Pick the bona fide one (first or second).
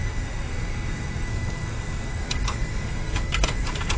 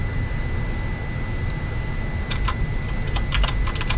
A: second